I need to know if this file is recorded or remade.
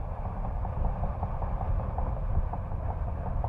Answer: recorded